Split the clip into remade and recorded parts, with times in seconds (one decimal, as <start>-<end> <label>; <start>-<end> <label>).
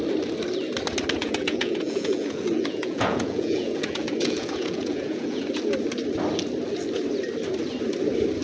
0.0-1.2 recorded; 1.2-5.4 remade; 5.4-8.4 recorded